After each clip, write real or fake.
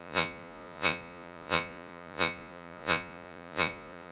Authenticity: fake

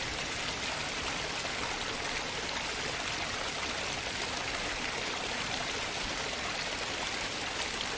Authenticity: real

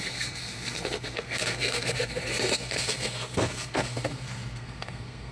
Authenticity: fake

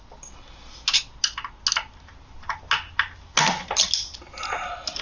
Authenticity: real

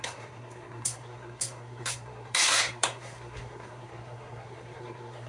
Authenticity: fake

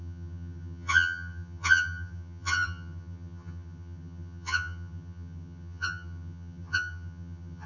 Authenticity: fake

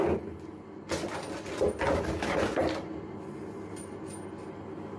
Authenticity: real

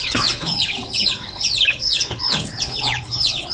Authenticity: fake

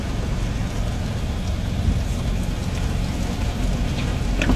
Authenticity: real